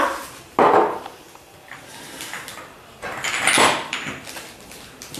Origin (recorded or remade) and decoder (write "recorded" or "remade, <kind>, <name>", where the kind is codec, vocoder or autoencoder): recorded